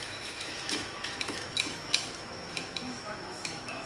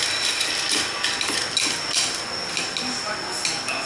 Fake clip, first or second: first